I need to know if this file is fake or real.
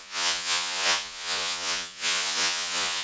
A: fake